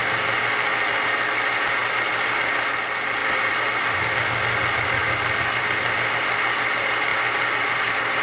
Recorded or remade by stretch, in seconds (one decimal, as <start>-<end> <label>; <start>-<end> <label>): 0.0-1.8 recorded; 1.8-2.3 remade; 2.3-3.2 recorded; 3.2-3.7 remade; 3.7-8.2 recorded